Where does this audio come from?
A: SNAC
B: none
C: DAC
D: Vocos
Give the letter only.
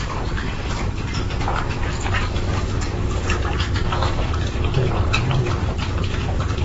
C